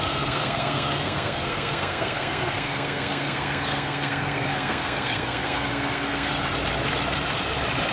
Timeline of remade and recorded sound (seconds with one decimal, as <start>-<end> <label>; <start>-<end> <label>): 0.0-6.3 remade; 6.3-7.9 recorded